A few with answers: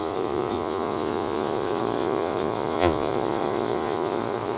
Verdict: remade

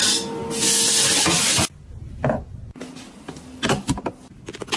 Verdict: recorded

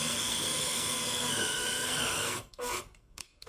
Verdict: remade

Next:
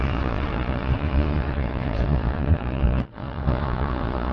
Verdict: remade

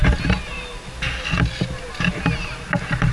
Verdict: recorded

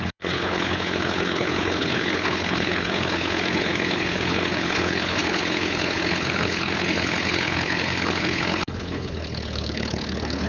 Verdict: remade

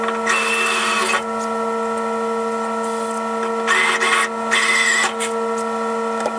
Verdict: recorded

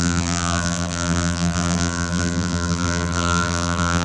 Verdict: remade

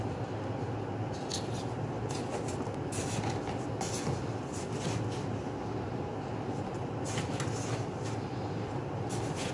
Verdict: recorded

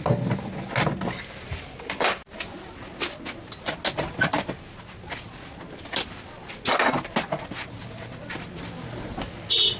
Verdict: recorded